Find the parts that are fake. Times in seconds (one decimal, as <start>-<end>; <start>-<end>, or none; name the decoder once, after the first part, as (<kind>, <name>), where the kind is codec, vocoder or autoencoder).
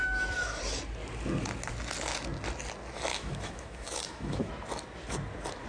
0.0-0.6 (autoencoder, DAC-VAE); 3.1-4.5